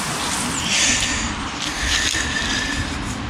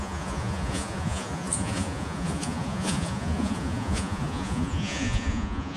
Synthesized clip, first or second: second